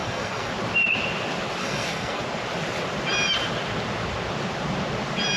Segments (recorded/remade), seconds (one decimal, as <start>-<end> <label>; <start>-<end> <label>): 0.0-0.5 remade; 0.5-1.6 recorded; 1.6-2.2 remade; 2.2-5.4 recorded